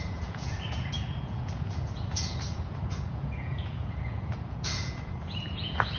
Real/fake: fake